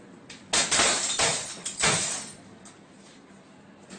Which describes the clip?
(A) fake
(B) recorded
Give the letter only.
B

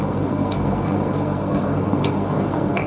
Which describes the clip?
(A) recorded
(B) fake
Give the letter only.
B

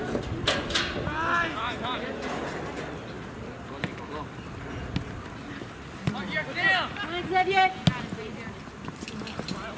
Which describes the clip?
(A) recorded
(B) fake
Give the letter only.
A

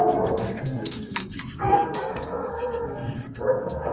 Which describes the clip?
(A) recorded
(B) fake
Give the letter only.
B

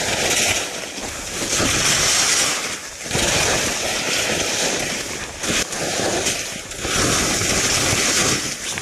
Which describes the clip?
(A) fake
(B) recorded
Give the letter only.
B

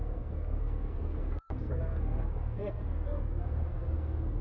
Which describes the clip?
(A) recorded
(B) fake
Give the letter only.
B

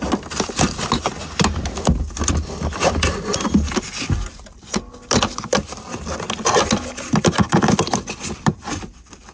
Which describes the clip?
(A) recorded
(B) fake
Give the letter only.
A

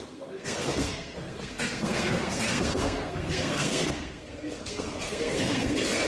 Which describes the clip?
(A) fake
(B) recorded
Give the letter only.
A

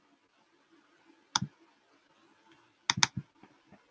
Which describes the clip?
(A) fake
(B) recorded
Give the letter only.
B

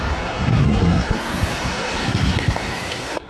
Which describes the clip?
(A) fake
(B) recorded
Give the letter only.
A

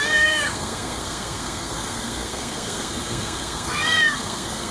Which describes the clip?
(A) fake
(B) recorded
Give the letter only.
A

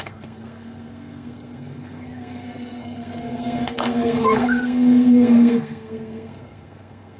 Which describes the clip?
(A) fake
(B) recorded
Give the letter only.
A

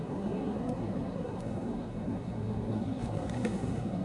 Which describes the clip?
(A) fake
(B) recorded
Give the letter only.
A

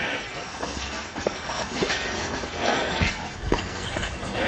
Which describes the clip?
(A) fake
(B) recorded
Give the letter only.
A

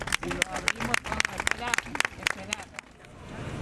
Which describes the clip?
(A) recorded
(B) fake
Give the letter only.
A